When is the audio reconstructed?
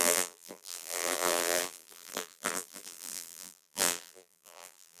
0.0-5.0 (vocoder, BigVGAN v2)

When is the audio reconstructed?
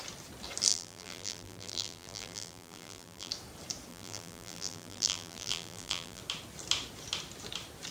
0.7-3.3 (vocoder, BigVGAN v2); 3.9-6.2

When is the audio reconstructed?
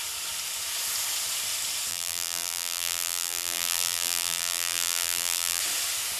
1.9-5.6 (vocoder, BigVGAN v2)